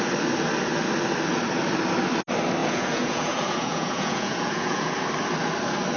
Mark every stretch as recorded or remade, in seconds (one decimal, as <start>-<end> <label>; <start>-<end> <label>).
0.0-2.6 recorded; 2.6-4.9 remade; 4.9-6.0 recorded